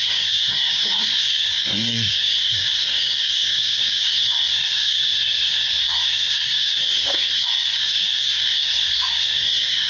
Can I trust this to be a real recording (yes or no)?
no